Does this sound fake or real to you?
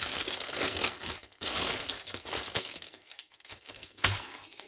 fake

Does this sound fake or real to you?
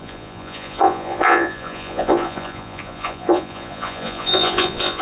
fake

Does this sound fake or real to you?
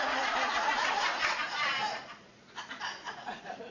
fake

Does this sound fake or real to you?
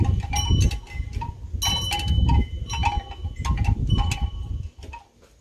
real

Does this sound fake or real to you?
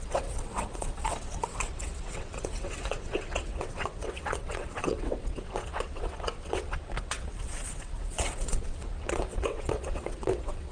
fake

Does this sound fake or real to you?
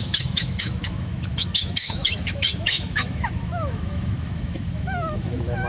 fake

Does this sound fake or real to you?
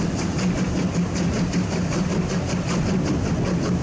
real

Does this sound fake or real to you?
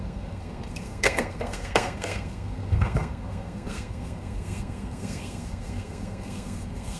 fake